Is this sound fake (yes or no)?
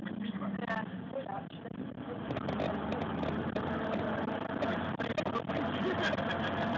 no